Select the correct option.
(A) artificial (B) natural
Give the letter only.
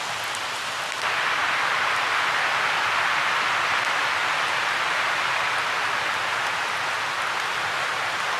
B